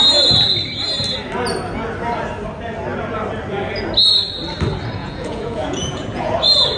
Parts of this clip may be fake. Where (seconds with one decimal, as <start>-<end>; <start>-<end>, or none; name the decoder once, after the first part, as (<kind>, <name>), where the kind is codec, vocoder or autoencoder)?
5.0-6.3 (vocoder, Vocos)